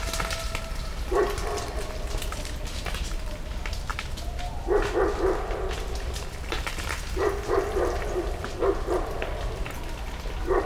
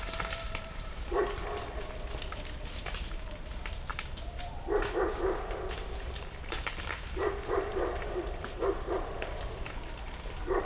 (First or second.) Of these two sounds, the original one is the first